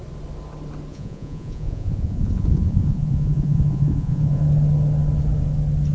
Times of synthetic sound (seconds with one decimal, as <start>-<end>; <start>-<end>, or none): 0.9-4.4